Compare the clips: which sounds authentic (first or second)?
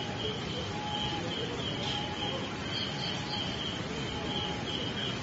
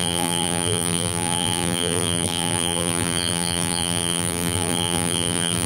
first